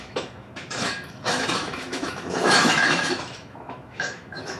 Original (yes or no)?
no